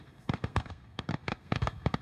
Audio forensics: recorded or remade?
remade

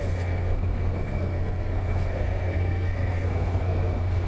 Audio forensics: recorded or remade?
remade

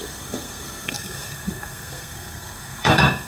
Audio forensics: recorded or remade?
remade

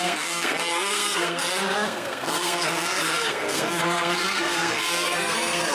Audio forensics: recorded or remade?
remade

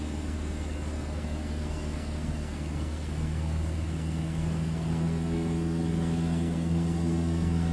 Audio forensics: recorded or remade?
remade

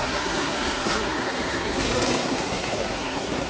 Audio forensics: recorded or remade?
remade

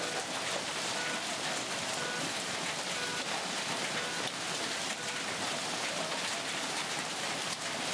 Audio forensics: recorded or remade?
recorded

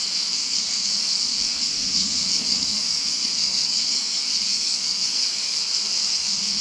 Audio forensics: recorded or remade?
remade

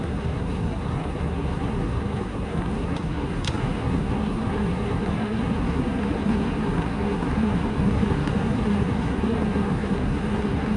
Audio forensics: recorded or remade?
remade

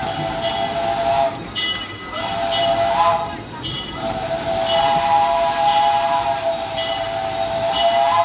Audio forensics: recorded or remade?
recorded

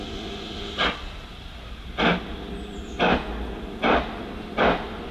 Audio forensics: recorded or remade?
recorded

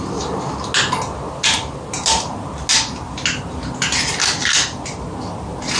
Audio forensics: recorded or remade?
recorded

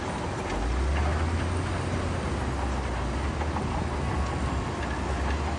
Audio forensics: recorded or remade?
recorded